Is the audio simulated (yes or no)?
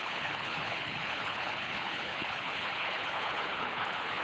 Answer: yes